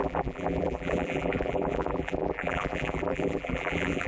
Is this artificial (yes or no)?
yes